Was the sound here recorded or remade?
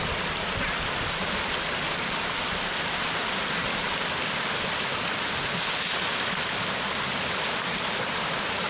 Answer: recorded